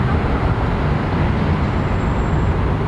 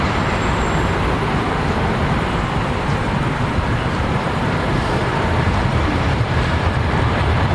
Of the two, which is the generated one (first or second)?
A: second